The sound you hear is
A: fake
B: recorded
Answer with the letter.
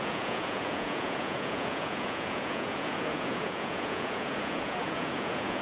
A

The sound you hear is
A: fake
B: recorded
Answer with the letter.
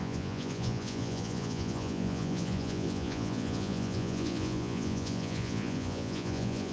A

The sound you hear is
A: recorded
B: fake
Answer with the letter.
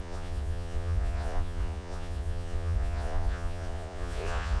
B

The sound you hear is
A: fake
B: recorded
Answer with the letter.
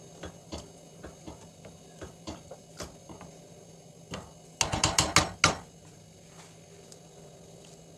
B